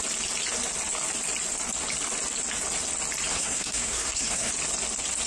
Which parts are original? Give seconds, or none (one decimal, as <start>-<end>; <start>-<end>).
0.0-3.3; 4.5-5.3